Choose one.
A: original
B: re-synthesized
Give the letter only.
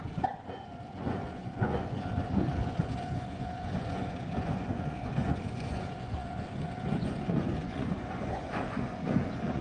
B